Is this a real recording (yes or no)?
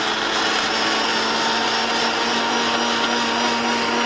yes